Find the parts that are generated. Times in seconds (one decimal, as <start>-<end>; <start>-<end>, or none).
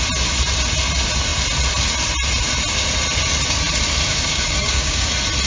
4.1-5.1